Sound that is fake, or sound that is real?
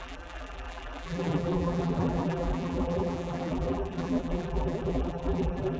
fake